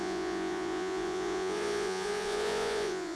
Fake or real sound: fake